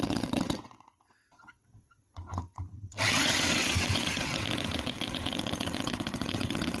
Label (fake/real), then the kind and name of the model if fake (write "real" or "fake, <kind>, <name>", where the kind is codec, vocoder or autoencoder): fake, vocoder, WaveNeXt